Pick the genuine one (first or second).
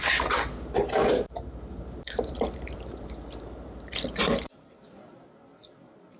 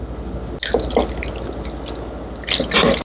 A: second